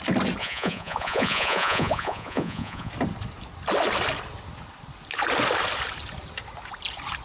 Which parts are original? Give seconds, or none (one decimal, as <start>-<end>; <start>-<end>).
0.0-0.4; 2.9-7.2